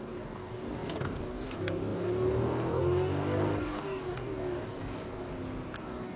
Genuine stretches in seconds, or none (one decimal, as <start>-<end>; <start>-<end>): 5.3-5.8